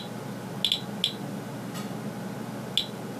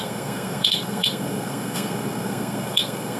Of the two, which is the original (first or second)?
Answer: first